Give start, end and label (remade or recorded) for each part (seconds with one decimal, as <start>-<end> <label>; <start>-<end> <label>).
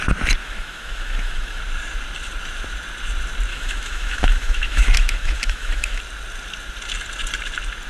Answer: 0.0-0.4 recorded; 0.4-1.6 remade; 1.6-3.5 recorded; 3.5-6.0 remade; 6.0-7.9 recorded